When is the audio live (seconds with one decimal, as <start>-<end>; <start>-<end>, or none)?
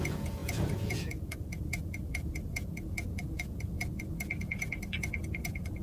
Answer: none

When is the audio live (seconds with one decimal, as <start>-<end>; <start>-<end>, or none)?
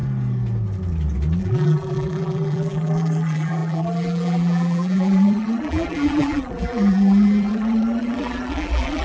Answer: 0.0-1.4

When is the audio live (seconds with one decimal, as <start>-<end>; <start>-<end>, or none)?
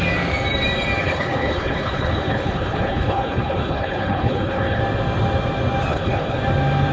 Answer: 0.0-1.0; 4.8-5.9; 6.4-6.9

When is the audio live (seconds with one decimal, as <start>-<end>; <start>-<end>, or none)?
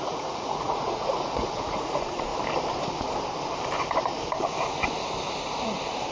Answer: 2.3-6.1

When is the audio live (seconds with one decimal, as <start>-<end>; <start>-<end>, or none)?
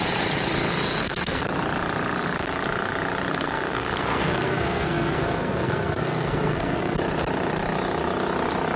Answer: 0.0-1.0; 1.5-3.3; 7.0-8.8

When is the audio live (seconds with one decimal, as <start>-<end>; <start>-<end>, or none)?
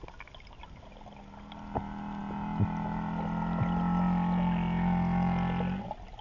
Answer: 0.0-6.2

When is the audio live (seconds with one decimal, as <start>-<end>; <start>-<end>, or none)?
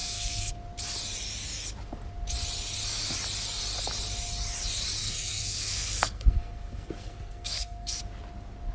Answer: 0.5-5.0; 8.0-8.7